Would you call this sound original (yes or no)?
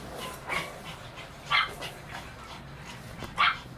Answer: yes